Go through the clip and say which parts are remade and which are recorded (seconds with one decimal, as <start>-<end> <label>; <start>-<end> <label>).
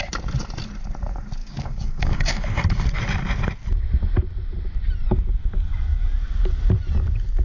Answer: 0.0-1.4 recorded; 1.4-2.4 remade; 2.4-7.4 recorded